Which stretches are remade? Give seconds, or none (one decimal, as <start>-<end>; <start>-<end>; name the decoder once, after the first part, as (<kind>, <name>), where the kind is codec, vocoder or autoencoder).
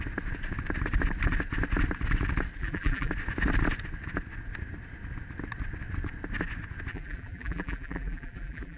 2.6-3.1 (vocoder, BigVGAN v2); 6.9-8.8